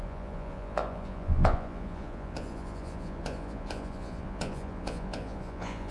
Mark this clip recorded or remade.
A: remade